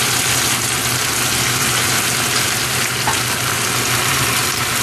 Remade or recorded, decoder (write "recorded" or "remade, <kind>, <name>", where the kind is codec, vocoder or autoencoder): recorded